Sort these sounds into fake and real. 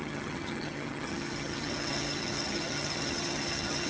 fake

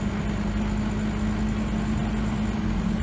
real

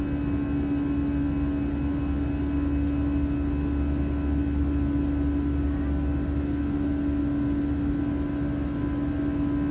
real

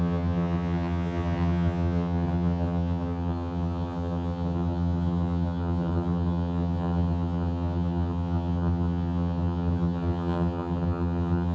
fake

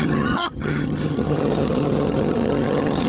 fake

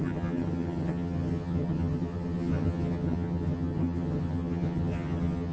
fake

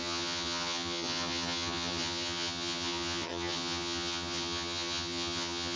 fake